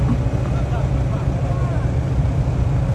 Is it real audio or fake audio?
real